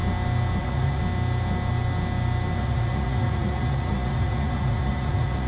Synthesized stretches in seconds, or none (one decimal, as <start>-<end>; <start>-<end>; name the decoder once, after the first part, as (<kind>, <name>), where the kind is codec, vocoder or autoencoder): 0.6-1.0 (vocoder, Vocos); 2.6-5.5